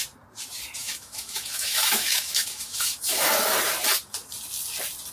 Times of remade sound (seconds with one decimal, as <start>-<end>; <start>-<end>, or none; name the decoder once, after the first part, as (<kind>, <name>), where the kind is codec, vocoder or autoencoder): 0.8-3.3 (autoencoder, DAC-VAE)